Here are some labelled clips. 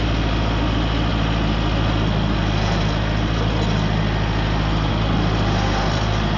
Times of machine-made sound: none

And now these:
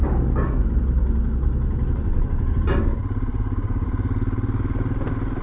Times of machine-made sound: 3.3-3.9 (codec, DAC)

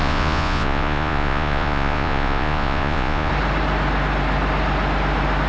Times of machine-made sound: 0.0-3.3 (vocoder, Vocos)

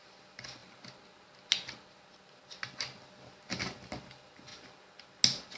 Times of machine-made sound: none

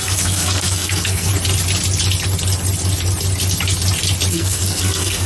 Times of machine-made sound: 0.0-1.3 (codec, SNAC); 4.3-5.3

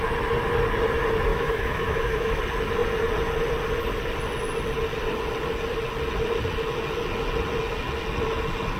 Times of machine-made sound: 1.3-2.4 (autoencoder, DAC-VAE)

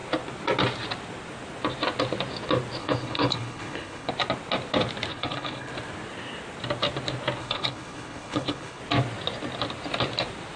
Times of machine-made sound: 2.8-4.1 (codec, HILCodec); 5.1-5.7; 7.4-8.8

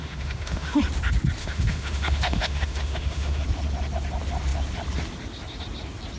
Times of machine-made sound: 0.0-0.8 (autoencoder, DAC-VAE); 1.4-3.4